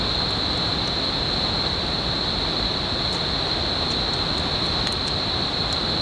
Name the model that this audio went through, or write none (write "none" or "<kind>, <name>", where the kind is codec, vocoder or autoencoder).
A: none